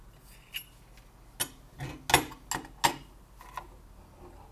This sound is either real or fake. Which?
real